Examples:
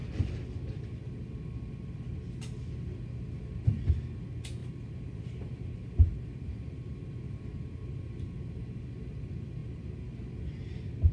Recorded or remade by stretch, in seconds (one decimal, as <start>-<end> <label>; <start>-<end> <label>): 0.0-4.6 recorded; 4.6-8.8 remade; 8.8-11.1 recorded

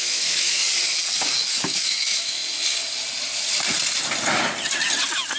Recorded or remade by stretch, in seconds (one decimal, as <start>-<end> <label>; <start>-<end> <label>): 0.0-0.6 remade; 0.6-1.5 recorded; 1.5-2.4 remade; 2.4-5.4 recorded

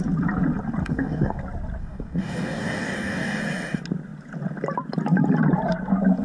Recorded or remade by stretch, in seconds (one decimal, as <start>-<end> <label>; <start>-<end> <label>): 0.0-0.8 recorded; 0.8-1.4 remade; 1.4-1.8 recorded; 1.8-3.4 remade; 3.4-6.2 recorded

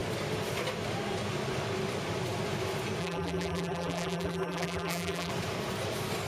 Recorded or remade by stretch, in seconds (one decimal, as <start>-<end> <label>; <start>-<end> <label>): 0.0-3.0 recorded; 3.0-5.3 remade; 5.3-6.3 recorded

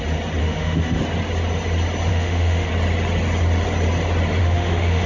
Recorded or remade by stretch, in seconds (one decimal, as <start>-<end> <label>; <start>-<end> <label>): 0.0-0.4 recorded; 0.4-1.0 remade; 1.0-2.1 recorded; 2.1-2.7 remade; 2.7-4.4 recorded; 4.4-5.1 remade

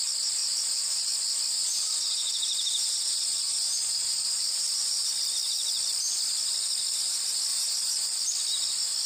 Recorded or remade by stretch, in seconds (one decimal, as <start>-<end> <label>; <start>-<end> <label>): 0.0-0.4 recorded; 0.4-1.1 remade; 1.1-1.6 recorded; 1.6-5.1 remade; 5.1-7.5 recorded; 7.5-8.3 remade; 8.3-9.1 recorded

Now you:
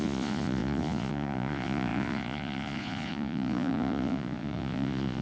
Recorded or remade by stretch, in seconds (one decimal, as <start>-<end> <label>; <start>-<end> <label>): 0.0-5.2 remade

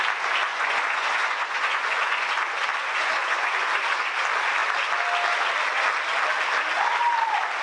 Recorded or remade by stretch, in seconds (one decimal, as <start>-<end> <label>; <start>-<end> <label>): 0.0-0.5 recorded; 0.5-2.3 remade; 2.3-2.7 recorded; 2.7-4.1 remade; 4.1-7.6 recorded